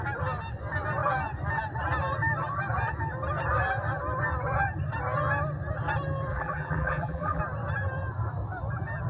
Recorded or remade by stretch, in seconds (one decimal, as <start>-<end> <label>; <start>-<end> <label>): 0.0-6.3 recorded; 6.3-7.4 remade; 7.4-9.1 recorded